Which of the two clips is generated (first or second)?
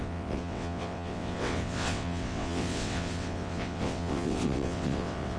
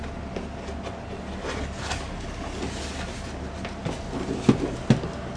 first